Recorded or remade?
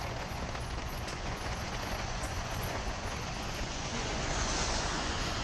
remade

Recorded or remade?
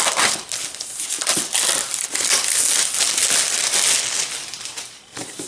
recorded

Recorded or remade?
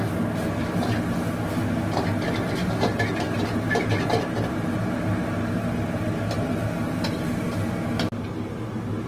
recorded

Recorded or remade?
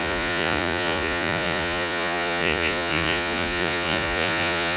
remade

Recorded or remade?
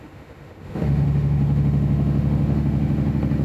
remade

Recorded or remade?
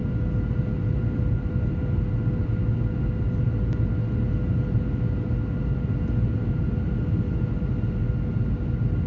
recorded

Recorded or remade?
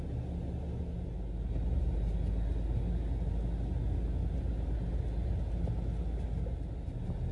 recorded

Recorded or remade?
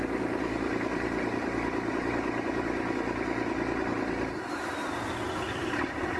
recorded